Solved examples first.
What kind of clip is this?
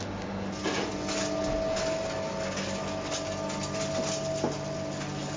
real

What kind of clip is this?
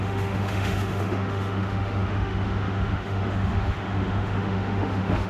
fake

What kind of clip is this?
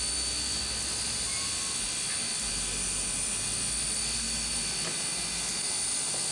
real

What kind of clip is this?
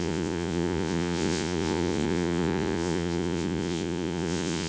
fake